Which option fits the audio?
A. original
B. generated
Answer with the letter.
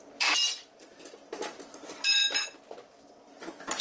A